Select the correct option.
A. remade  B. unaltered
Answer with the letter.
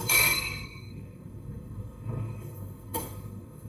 A